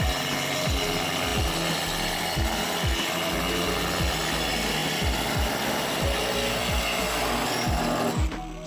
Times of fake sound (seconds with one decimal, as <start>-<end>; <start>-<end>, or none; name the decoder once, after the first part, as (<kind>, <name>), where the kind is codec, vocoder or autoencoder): none